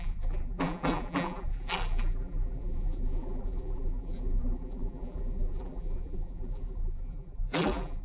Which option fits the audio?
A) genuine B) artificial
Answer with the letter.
B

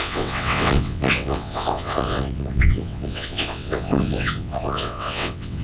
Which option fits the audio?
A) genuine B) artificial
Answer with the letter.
B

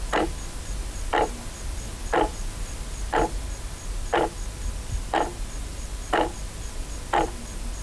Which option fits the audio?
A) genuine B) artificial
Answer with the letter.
A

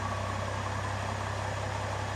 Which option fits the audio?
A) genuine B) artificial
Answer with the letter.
A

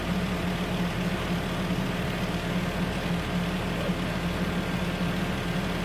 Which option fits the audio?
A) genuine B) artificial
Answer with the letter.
A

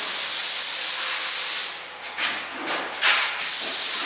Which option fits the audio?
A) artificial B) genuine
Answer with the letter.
B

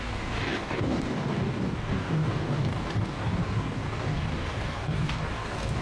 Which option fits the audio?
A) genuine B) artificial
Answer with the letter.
B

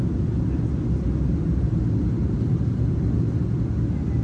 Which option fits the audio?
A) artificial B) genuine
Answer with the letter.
B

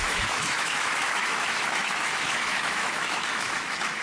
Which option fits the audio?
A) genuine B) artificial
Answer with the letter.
B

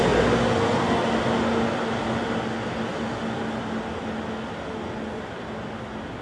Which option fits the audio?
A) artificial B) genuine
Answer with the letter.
B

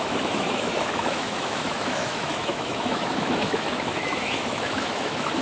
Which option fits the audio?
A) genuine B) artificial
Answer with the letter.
B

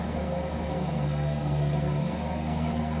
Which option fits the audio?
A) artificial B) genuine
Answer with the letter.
A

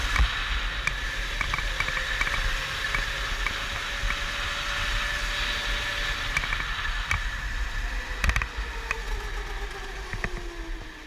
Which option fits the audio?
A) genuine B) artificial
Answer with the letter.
A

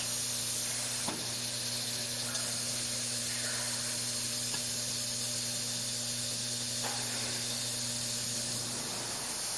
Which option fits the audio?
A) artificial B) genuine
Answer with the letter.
B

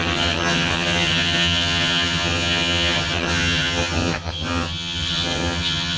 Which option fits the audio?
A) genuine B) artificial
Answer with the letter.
B